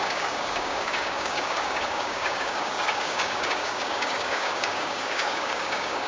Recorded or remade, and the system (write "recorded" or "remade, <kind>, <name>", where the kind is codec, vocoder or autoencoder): remade, codec, DAC